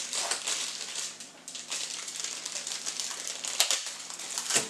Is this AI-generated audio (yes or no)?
yes